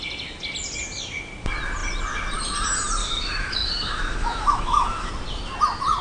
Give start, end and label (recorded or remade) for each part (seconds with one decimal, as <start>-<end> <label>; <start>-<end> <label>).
0.0-3.0 recorded; 3.0-5.1 remade; 5.1-6.0 recorded